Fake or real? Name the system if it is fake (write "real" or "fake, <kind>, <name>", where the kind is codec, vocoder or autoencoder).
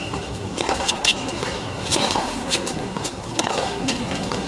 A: fake, codec, SNAC